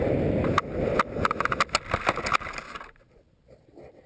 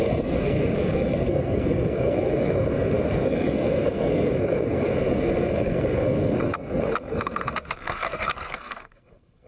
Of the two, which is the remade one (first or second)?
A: second